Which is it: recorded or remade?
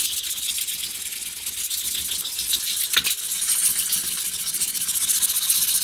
recorded